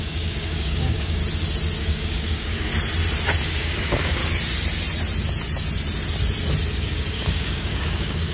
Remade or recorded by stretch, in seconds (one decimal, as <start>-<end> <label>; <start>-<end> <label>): 0.0-1.2 remade; 1.2-1.8 recorded; 1.8-2.7 remade; 2.7-3.6 recorded; 3.6-4.2 remade; 4.2-6.7 recorded; 6.7-8.3 remade